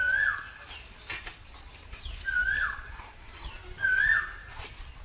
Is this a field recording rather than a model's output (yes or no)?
yes